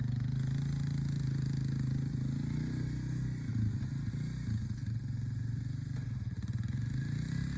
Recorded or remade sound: recorded